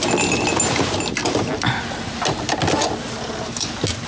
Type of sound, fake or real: real